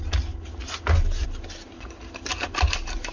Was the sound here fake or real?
real